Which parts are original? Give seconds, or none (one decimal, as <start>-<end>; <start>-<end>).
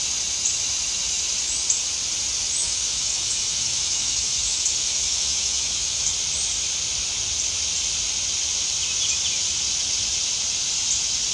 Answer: 0.0-2.6; 6.1-11.3